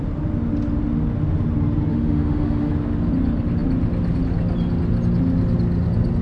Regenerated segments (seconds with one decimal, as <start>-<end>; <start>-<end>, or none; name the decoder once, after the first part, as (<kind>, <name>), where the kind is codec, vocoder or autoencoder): 1.9-2.7 (autoencoder, DAC-VAE)